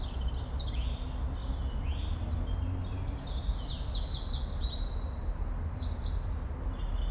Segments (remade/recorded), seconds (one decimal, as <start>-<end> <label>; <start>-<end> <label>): 0.0-7.1 recorded